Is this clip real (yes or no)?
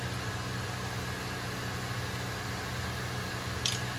yes